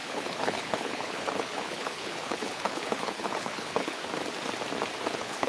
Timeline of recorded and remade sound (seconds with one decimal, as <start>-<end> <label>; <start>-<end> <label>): 0.0-4.0 remade; 4.0-5.1 recorded; 5.1-5.5 remade